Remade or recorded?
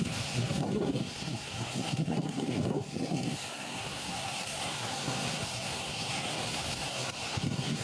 remade